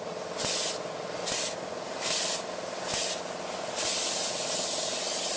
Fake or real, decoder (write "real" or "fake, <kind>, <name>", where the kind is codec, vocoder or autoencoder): real